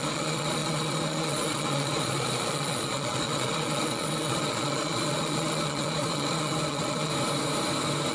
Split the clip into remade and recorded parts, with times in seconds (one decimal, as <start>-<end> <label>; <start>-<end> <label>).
0.0-7.1 remade; 7.1-8.1 recorded